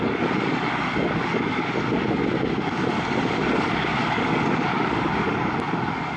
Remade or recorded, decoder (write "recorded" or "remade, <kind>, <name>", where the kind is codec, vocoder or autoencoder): remade, codec, DAC